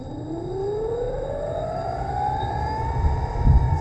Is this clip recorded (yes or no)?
yes